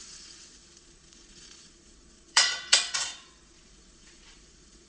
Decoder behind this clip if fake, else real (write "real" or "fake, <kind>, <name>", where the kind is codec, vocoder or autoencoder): fake, vocoder, Vocos